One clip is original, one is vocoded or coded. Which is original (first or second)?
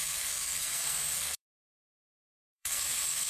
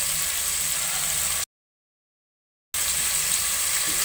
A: second